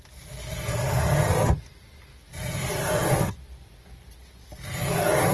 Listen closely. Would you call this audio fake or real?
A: real